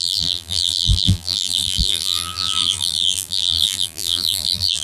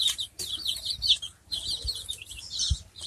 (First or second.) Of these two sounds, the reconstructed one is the first